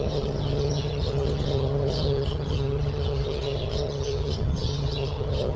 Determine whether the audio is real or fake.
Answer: fake